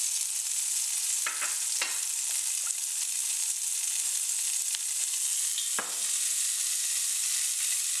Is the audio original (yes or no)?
yes